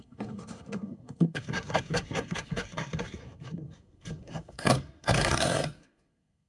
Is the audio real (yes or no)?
no